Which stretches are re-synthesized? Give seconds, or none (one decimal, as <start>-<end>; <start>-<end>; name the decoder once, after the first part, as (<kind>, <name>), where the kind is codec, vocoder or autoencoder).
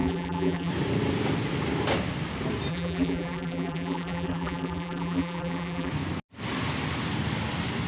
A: 0.0-0.7 (vocoder, BigVGAN v2); 2.7-5.9